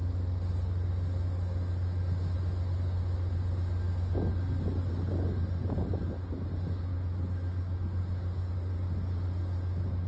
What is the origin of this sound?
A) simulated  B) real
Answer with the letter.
B